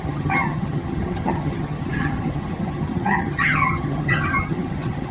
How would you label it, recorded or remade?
remade